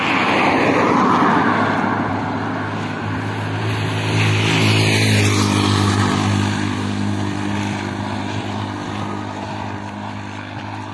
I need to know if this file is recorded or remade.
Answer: recorded